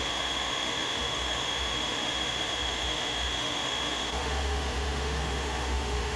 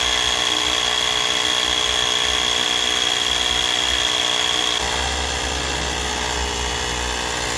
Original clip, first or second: second